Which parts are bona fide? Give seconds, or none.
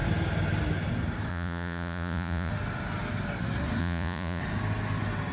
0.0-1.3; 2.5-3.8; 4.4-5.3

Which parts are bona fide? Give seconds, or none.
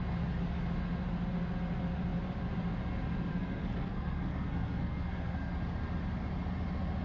0.0-3.3; 5.5-7.0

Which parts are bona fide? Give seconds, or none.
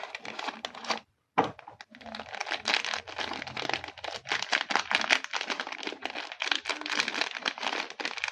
0.0-8.3